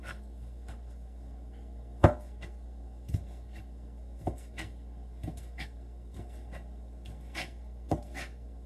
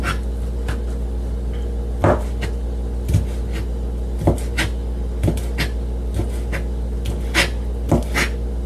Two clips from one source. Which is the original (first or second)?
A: second